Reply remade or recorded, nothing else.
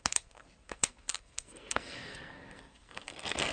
remade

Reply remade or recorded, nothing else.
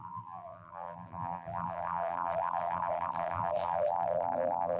remade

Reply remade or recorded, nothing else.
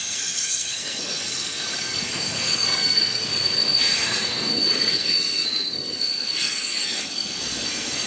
remade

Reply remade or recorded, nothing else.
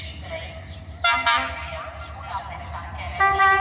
recorded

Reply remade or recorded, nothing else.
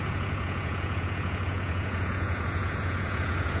remade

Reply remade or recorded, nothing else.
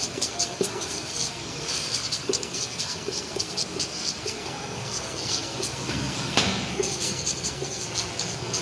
remade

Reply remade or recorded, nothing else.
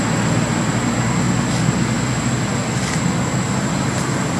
recorded